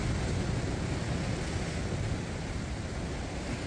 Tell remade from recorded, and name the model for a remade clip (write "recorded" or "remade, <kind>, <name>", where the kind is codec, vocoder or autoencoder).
recorded